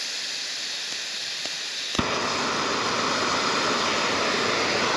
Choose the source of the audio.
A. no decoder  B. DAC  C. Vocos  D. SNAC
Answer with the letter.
A